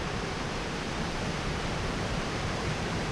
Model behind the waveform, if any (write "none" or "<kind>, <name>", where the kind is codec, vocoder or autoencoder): vocoder, BigVGAN v2